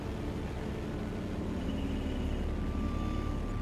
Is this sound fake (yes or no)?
no